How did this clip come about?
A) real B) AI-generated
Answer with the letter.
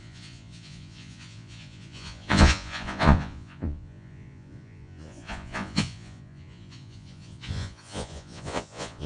B